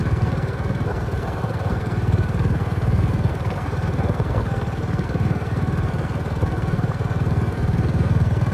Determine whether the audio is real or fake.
fake